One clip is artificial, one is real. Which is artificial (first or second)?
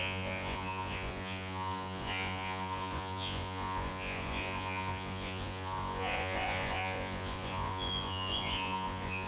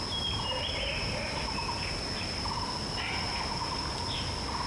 first